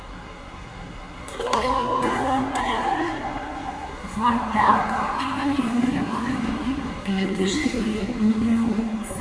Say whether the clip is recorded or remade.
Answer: remade